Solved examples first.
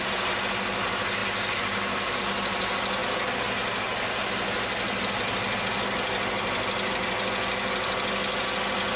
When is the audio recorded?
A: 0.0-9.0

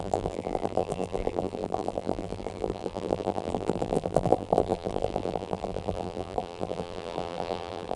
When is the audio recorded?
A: none

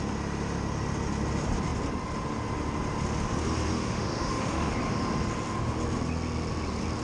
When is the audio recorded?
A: 0.0-3.7; 4.7-7.0